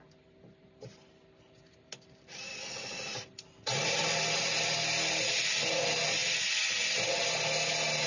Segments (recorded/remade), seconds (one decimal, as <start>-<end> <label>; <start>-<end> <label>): 0.0-8.1 recorded